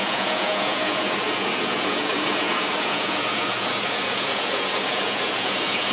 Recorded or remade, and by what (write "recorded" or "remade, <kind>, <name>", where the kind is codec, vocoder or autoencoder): remade, vocoder, Vocos